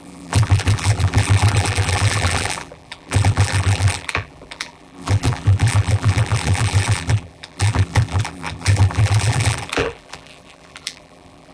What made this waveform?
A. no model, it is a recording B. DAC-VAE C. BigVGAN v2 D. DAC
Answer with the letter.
C